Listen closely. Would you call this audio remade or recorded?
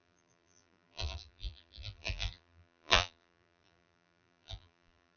remade